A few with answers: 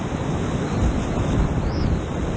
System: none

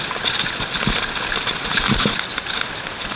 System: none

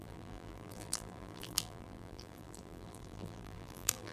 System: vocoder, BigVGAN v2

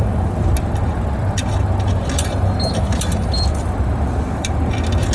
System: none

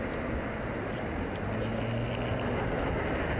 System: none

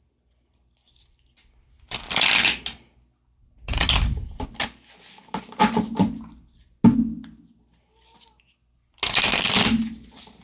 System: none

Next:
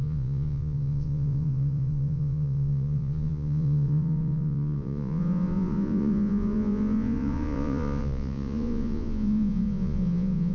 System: vocoder, Vocos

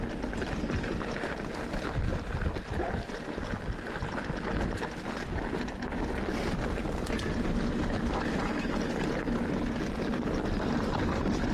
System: none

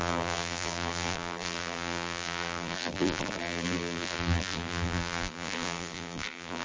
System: vocoder, BigVGAN v2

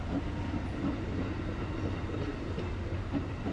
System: none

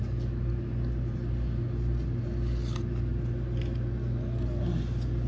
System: none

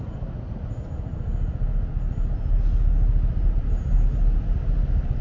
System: none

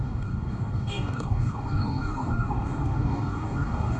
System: codec, DAC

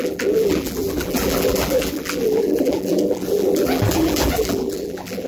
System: vocoder, BigVGAN v2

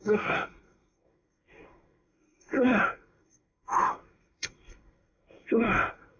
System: codec, SNAC